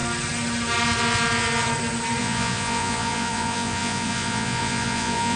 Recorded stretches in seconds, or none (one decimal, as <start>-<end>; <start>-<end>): 0.0-2.2